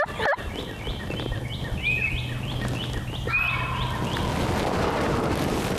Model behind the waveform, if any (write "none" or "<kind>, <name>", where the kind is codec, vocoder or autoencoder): none